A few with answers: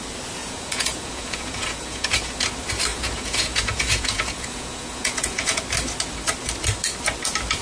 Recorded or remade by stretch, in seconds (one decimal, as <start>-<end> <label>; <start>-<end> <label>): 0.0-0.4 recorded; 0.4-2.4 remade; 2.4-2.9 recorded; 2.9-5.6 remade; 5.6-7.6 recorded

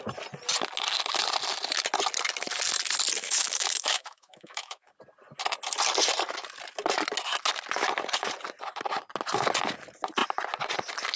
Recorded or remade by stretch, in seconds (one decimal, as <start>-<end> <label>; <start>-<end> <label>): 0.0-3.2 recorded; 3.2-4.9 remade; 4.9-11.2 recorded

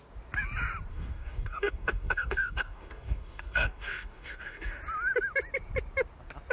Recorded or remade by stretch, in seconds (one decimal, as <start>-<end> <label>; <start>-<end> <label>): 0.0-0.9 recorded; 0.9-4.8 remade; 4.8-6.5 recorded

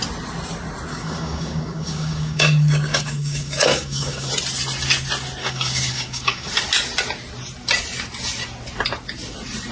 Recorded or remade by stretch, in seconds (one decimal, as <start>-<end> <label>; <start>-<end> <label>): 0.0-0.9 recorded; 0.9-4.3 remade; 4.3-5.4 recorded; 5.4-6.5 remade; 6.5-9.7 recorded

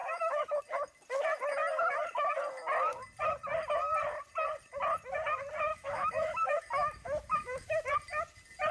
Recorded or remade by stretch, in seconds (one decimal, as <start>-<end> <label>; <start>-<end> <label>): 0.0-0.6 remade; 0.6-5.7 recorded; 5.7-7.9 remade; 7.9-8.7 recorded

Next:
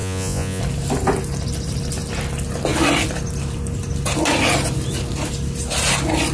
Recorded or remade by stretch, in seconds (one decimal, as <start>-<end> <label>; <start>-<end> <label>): 0.0-0.6 remade; 0.6-6.3 recorded

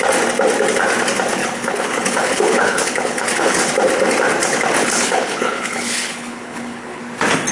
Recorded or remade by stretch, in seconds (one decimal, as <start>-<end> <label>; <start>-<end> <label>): 0.0-1.4 recorded; 1.4-3.6 remade; 3.6-4.8 recorded; 4.8-7.0 remade; 7.0-7.5 recorded

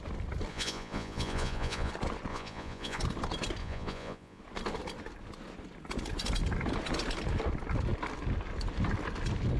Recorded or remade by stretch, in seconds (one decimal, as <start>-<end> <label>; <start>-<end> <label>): 0.0-0.5 recorded; 0.5-1.9 remade; 1.9-2.3 recorded; 2.3-3.0 remade; 3.0-3.6 recorded; 3.6-4.4 remade; 4.4-9.6 recorded